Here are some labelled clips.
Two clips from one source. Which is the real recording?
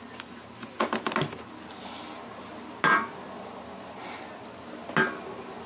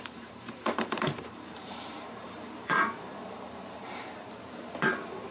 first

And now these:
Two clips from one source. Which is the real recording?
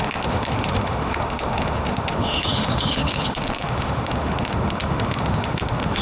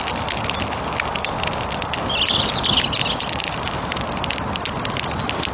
second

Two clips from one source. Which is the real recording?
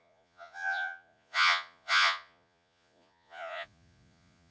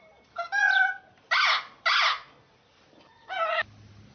second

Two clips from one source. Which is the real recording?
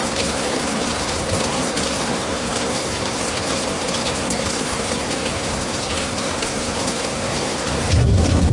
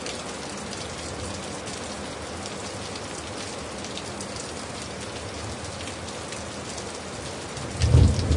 second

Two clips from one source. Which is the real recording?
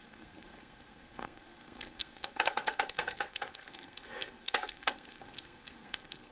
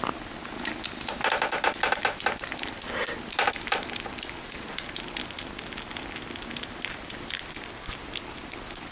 second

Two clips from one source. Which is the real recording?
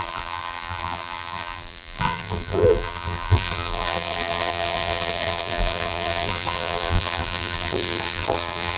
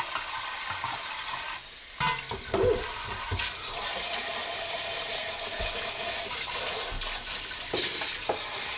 second